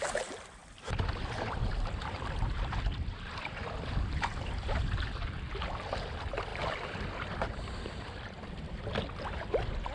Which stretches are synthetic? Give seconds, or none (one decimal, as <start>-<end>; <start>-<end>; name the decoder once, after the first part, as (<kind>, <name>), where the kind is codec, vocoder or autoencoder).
0.0-9.9 (vocoder, BigVGAN v2)